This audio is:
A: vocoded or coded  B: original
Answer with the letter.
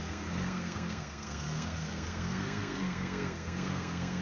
A